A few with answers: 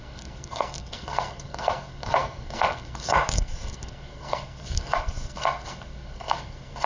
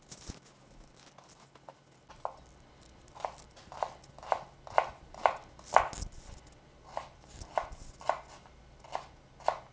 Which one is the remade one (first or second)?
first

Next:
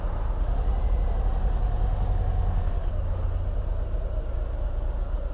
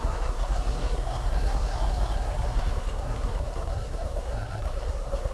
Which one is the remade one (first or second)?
second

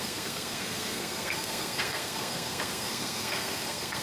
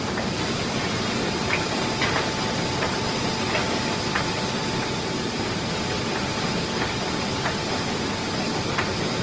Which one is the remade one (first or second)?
first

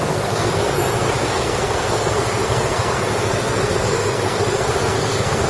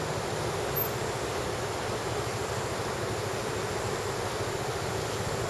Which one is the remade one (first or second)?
first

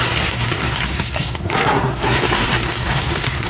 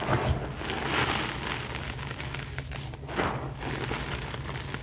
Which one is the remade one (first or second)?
first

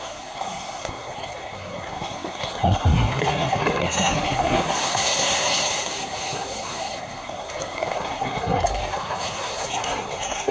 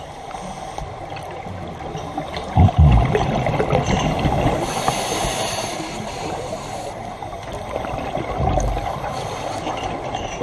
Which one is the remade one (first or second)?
first